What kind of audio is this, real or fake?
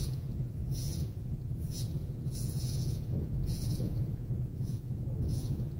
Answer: fake